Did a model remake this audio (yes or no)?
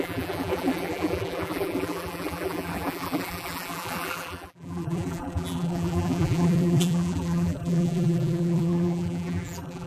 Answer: yes